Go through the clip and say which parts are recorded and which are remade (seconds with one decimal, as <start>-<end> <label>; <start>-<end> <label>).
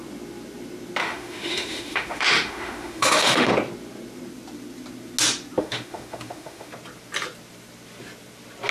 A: 0.0-1.0 recorded; 1.0-3.5 remade; 3.5-5.6 recorded; 5.6-6.7 remade; 6.7-8.7 recorded